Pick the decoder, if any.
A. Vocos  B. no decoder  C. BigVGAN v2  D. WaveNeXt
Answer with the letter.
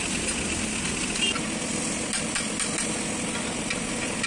B